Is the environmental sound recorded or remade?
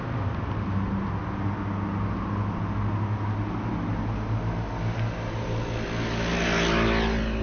recorded